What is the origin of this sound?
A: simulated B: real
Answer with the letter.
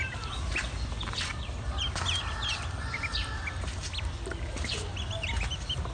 B